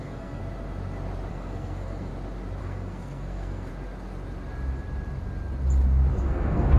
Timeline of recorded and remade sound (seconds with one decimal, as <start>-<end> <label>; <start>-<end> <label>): 0.0-0.4 remade; 0.4-1.3 recorded; 1.3-2.1 remade; 2.1-2.6 recorded; 2.6-3.7 remade; 3.7-6.1 recorded; 6.1-6.8 remade